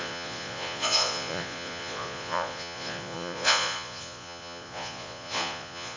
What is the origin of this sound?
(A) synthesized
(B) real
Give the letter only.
A